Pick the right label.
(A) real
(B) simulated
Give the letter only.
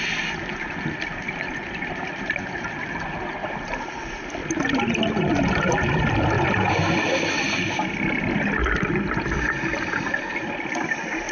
A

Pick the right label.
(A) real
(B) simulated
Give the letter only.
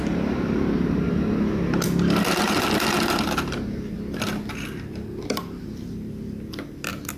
A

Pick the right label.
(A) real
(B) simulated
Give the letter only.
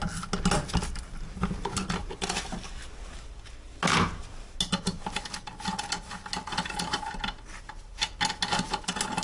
A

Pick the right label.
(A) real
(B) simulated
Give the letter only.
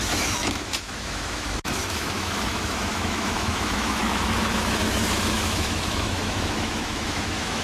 B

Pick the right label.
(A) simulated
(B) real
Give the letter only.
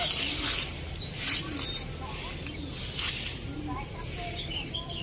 B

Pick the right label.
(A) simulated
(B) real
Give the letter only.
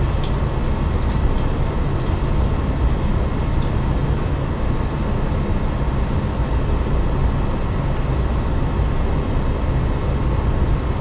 B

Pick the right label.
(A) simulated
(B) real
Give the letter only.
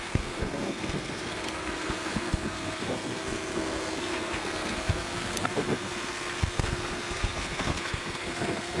A